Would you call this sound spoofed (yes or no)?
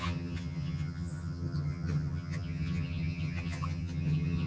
yes